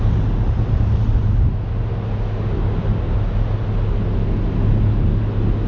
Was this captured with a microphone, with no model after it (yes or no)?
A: yes